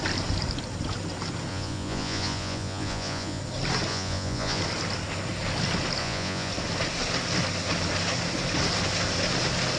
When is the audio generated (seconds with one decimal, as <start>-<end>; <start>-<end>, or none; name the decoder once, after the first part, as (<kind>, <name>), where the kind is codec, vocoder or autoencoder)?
1.5-3.4 (vocoder, Vocos); 3.9-4.6; 6.0-6.5

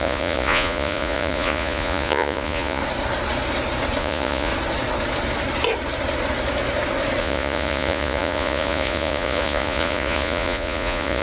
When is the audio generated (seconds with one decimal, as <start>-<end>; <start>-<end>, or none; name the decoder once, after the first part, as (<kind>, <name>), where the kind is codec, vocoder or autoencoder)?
0.0-2.8 (vocoder, Vocos); 4.0-4.5; 7.2-11.2

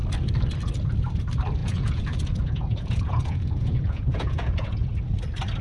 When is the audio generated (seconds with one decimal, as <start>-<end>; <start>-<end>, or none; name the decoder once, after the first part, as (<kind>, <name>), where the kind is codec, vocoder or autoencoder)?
1.6-5.0 (vocoder, Vocos)

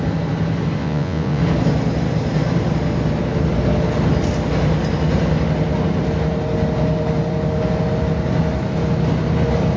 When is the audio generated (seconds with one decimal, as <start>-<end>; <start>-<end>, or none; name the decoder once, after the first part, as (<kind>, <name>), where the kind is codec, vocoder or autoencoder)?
0.8-1.4 (vocoder, Vocos)

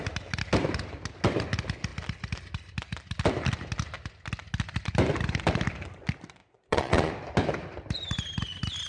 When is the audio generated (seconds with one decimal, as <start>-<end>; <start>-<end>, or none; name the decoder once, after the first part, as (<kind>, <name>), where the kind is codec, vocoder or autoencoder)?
6.4-7.1 (vocoder, Vocos)

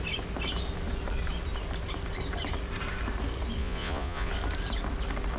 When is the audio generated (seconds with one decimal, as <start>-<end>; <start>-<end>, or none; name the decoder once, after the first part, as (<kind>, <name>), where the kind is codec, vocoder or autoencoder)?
3.6-4.3 (vocoder, Vocos)

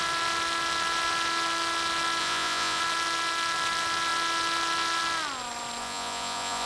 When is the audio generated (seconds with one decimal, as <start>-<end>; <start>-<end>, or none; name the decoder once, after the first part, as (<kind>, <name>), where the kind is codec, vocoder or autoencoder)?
2.2-2.8 (vocoder, Vocos); 5.8-6.7